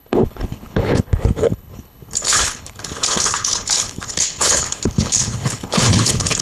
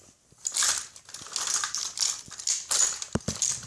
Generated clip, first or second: first